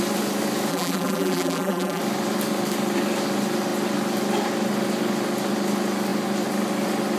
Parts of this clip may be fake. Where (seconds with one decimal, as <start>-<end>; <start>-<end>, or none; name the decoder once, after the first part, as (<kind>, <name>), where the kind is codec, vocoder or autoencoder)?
0.7-2.0 (vocoder, BigVGAN v2)

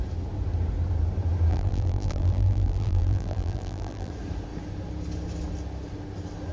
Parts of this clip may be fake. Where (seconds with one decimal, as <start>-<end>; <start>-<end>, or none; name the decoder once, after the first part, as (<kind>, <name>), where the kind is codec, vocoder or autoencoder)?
1.5-4.1 (vocoder, BigVGAN v2)

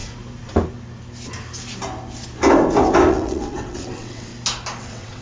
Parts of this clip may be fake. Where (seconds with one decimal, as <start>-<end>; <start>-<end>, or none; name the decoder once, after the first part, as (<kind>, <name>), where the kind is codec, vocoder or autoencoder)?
3.1-4.3 (vocoder, WaveNeXt); 4.8-5.2

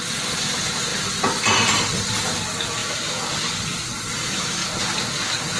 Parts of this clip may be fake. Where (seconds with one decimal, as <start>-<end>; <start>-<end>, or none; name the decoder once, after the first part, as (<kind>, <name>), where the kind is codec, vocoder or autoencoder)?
none